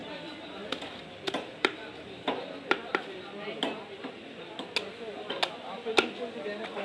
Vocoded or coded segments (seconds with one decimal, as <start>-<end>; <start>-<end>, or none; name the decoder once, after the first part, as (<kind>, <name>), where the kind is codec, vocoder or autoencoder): none